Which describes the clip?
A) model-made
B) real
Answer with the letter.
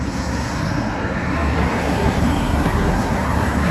A